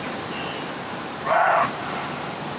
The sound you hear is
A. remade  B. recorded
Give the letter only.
B